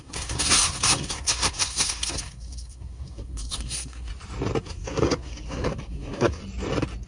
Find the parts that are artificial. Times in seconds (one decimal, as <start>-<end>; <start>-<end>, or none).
0.0-4.1; 4.6-6.4